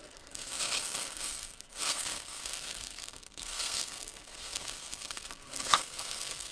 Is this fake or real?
fake